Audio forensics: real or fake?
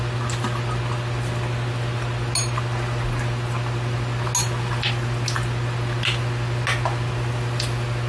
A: real